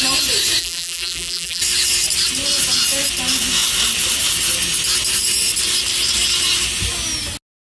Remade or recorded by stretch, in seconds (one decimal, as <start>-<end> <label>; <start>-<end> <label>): 0.0-0.6 recorded; 0.6-1.6 remade; 1.6-7.6 recorded